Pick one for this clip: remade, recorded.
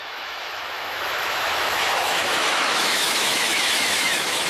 remade